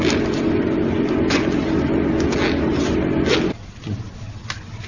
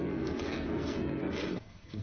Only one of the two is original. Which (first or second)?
first